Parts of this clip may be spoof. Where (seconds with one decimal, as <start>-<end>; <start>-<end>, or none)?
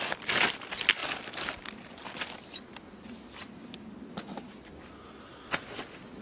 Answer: none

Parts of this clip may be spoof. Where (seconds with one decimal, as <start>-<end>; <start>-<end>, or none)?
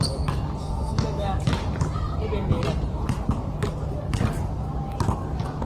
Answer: 0.8-1.5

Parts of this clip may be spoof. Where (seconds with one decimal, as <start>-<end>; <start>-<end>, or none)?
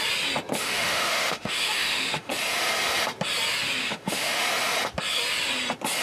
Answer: 0.6-2.3; 3.8-4.4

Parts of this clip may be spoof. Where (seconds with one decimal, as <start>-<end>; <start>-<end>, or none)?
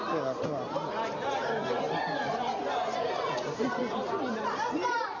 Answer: none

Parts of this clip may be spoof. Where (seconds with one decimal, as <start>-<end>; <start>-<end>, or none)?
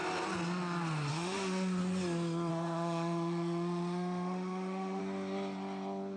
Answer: 1.1-1.8; 2.5-5.0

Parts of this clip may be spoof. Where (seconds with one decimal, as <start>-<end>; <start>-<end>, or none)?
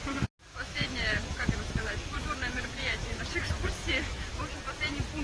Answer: 0.5-3.2; 3.8-4.4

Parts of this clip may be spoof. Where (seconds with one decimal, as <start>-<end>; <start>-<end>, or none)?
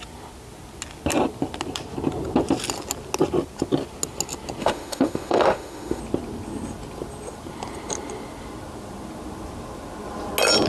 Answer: 4.6-6.0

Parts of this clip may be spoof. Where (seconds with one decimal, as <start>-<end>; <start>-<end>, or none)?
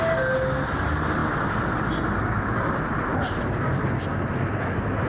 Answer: none